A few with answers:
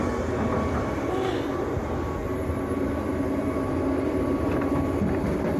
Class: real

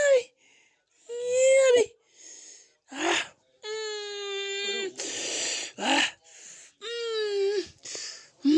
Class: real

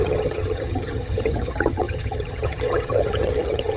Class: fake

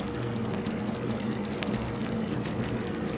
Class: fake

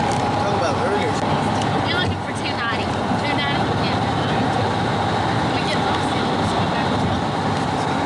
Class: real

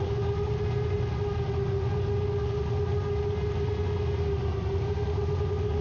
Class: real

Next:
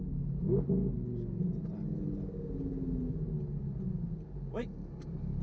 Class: real